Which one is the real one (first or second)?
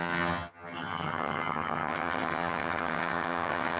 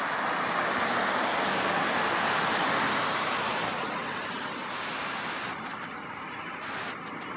second